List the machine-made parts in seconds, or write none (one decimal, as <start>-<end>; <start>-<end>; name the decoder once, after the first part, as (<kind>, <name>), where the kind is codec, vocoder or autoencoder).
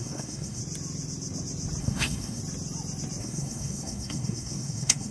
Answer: 0.0-0.6 (codec, SNAC); 1.8-2.4; 3.2-5.1